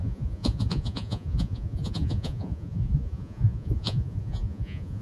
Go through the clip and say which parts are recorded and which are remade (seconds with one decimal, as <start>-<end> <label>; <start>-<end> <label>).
0.0-5.0 remade